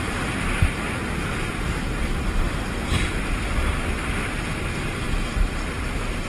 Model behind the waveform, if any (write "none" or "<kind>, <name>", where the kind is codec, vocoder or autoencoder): vocoder, BigVGAN v2